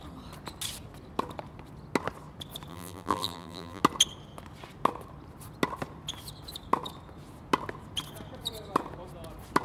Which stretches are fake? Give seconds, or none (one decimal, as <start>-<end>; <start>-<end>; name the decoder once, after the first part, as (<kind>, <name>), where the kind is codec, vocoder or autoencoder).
2.7-3.8 (vocoder, BigVGAN v2)